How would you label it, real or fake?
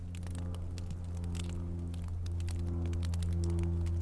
real